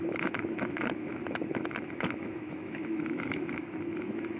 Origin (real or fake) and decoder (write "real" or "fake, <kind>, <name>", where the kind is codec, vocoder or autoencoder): fake, autoencoder, DAC-VAE